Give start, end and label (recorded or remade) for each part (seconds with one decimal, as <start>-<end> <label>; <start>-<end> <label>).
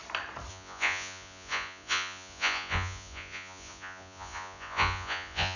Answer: 0.0-0.5 recorded; 0.5-5.6 remade